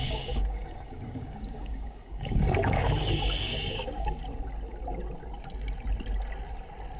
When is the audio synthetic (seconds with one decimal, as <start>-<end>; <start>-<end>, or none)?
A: 0.0-4.2